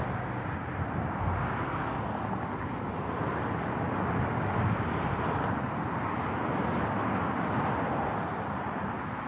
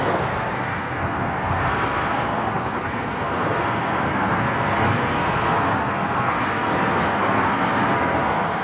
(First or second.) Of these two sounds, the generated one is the second